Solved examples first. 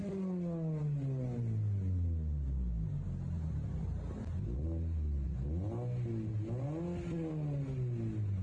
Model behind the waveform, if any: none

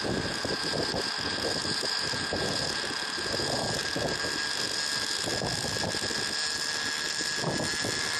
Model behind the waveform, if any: none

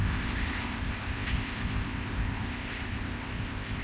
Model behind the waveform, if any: codec, ZipCodec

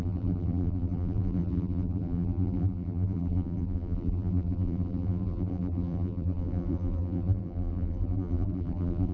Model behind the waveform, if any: vocoder, BigVGAN v2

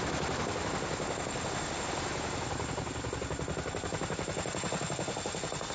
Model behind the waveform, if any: none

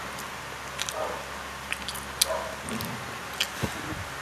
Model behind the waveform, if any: none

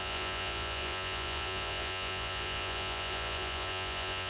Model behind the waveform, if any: vocoder, Vocos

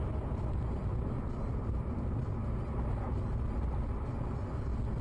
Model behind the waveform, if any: none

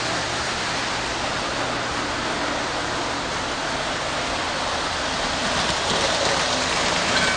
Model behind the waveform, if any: none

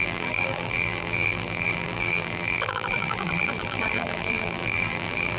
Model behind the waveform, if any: vocoder, BigVGAN v2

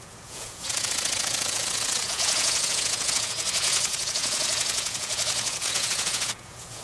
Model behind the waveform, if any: vocoder, Vocos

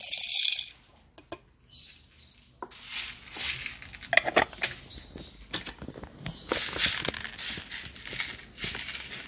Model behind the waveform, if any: none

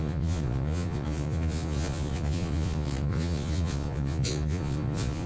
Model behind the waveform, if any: vocoder, Vocos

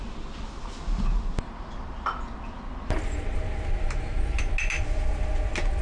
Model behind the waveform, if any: none